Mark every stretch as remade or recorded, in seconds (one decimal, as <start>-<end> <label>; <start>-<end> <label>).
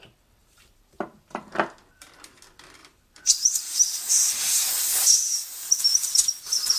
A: 0.0-0.4 recorded; 0.4-1.3 remade; 1.3-2.8 recorded; 2.8-4.1 remade; 4.1-6.8 recorded